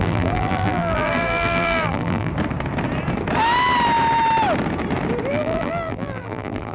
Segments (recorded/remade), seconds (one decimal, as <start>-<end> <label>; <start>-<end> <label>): 0.0-2.3 remade; 2.3-5.3 recorded; 5.3-6.7 remade